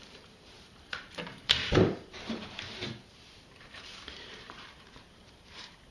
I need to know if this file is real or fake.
fake